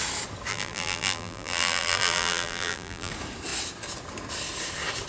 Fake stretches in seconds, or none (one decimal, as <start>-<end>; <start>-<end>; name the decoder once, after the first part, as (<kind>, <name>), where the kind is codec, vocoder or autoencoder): 0.5-3.1 (vocoder, BigVGAN v2)